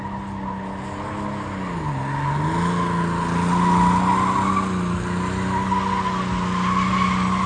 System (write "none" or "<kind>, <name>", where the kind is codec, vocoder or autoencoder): none